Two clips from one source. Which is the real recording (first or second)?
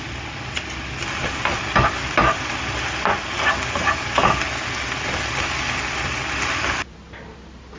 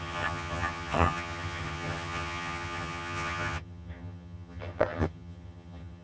first